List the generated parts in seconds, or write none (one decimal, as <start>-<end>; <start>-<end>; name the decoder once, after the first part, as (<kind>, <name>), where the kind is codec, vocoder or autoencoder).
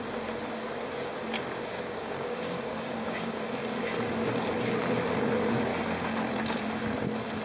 1.7-3.4 (codec, DAC)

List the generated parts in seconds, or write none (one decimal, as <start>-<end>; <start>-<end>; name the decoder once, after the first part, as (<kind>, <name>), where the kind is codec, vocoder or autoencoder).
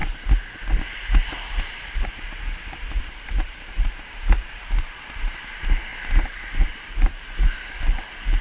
3.0-8.4 (vocoder, BigVGAN v2)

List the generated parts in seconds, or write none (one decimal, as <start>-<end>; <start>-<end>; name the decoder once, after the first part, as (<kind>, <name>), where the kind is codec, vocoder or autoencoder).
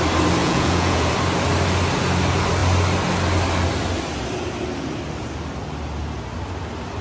0.4-1.1 (vocoder, Vocos)